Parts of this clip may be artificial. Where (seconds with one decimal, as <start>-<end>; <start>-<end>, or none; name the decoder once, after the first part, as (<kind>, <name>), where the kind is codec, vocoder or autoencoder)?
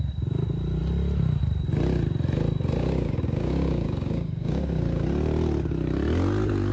2.8-5.0 (codec, DAC)